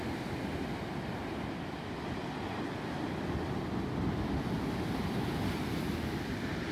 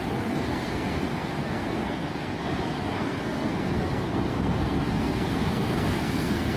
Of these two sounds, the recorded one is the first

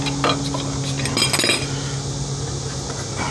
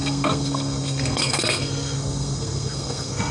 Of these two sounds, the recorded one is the first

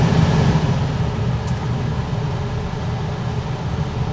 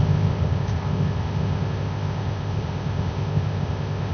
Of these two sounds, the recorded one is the first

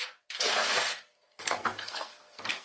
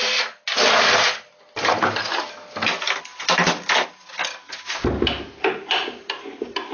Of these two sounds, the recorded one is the second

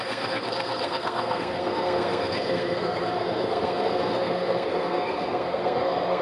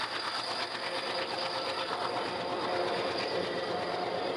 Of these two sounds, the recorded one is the second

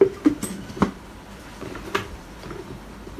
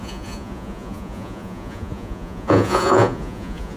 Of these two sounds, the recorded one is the first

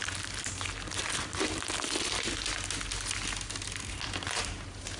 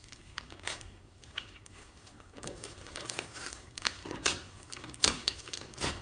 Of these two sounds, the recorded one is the first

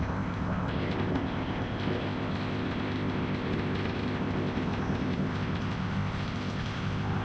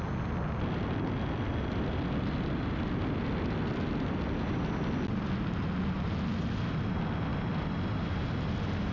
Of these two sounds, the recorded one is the second